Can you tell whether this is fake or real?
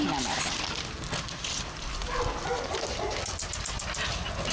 real